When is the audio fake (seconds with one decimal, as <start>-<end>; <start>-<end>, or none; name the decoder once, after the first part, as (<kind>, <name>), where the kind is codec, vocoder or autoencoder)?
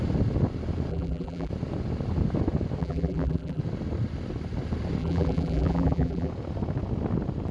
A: 0.9-1.5 (vocoder, BigVGAN v2); 2.8-3.6; 5.0-6.3